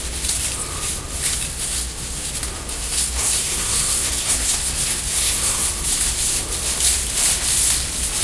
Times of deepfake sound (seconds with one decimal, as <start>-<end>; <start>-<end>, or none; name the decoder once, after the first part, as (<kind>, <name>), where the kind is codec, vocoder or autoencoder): 1.5-2.3 (codec, SNAC); 2.7-5.7